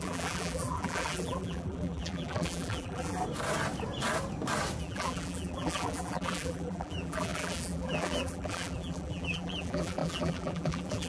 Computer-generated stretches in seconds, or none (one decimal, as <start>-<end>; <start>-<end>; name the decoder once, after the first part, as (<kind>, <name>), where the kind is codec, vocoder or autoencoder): 0.0-3.2 (vocoder, BigVGAN v2); 4.8-11.1